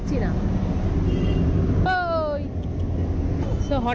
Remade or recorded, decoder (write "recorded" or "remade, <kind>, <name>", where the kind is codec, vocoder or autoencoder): recorded